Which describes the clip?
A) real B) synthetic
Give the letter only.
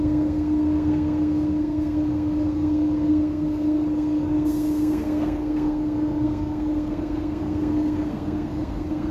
B